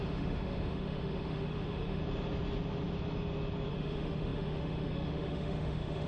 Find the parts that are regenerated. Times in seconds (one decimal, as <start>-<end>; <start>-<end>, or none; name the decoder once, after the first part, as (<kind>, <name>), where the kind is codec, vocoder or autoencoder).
0.0-2.0 (autoencoder, DAC-VAE); 3.7-6.1